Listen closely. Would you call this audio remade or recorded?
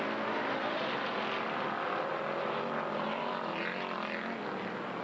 recorded